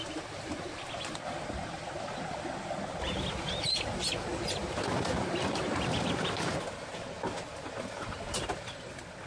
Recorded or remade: recorded